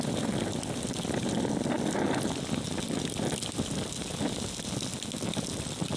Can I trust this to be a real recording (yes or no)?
yes